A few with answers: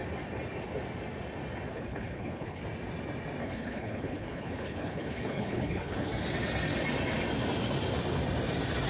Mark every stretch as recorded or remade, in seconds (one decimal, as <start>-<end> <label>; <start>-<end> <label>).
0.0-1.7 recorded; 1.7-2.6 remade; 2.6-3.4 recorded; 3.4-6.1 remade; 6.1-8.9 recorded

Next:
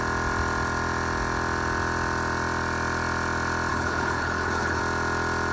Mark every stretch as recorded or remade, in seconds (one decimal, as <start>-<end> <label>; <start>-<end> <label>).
0.0-3.7 recorded; 3.7-4.8 remade; 4.8-5.5 recorded

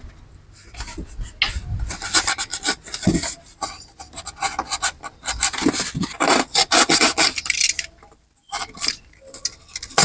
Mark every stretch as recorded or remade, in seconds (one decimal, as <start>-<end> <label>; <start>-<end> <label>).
0.0-10.0 recorded

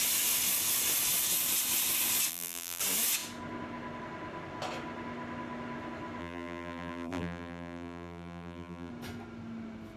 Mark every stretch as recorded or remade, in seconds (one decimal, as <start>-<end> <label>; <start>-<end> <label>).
0.0-2.3 recorded; 2.3-2.8 remade; 2.8-6.2 recorded; 6.2-8.9 remade; 8.9-10.0 recorded

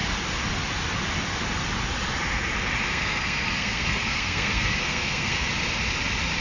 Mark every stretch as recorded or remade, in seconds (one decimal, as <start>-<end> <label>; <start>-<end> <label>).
0.0-2.9 recorded; 2.9-5.5 remade; 5.5-6.4 recorded

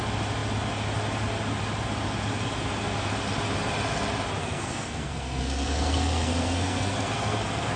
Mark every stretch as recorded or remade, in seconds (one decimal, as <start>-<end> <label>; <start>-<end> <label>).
0.0-4.4 recorded; 4.4-7.8 remade

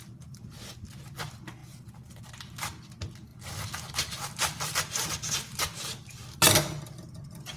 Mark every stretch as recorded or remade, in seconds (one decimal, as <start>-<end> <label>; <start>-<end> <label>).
0.0-1.6 recorded; 1.6-2.2 remade; 2.2-3.3 recorded; 3.3-6.5 remade; 6.5-7.6 recorded